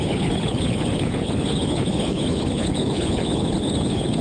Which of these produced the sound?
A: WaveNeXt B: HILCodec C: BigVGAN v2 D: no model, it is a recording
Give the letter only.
B